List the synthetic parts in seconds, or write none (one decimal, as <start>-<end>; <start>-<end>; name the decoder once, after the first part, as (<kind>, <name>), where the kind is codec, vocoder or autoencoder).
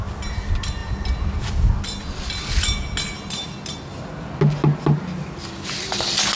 none